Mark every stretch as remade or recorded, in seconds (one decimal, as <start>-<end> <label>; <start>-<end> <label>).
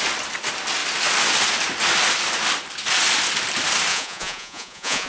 0.0-3.9 recorded; 3.9-5.1 remade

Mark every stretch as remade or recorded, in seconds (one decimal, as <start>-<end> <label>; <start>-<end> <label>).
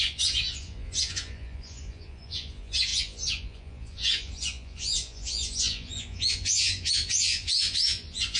0.0-8.4 remade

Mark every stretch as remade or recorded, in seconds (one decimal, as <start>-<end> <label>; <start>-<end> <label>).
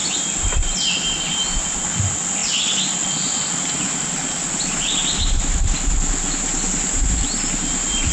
0.0-8.1 recorded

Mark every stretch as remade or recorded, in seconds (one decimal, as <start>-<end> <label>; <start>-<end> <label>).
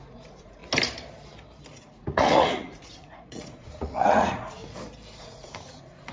0.0-0.6 remade; 0.6-1.8 recorded; 1.8-4.6 remade; 4.6-5.2 recorded; 5.2-6.1 remade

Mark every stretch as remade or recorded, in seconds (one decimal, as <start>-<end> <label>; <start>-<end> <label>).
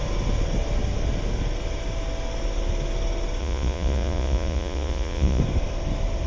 0.0-3.4 recorded; 3.4-5.4 remade; 5.4-6.3 recorded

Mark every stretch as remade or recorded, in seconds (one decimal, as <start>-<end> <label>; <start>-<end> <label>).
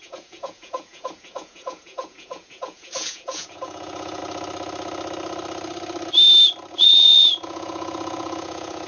0.0-4.2 remade; 4.2-6.7 recorded; 6.7-8.9 remade